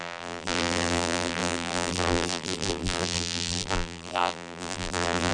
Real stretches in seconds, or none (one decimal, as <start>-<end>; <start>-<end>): none